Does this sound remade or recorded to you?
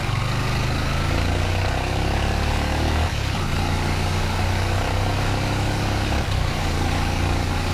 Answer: remade